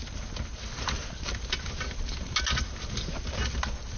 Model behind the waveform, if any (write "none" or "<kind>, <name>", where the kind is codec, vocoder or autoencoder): none